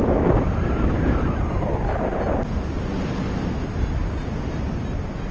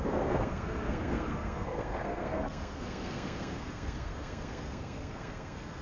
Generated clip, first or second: second